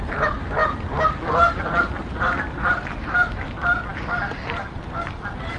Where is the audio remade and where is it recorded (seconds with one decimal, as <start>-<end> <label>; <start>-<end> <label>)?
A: 0.0-5.6 recorded